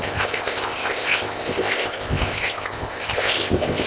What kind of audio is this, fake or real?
fake